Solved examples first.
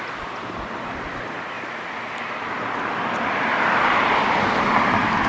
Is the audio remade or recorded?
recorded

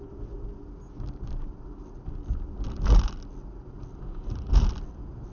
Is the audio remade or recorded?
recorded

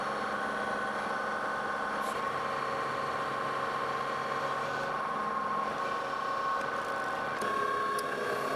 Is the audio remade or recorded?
recorded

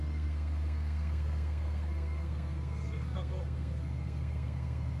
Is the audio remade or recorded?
remade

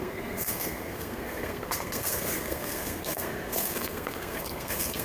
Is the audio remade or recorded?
remade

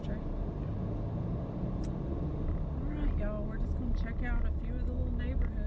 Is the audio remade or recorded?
recorded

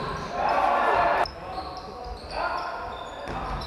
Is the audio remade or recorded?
recorded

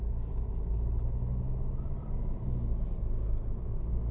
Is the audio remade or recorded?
recorded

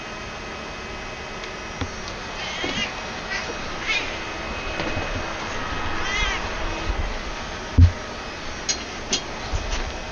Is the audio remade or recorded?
recorded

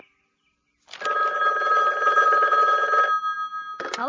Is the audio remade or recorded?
recorded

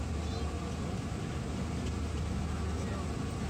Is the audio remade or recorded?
recorded